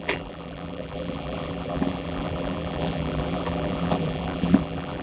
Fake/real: fake